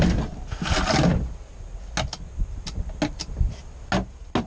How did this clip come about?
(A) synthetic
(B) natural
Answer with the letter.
B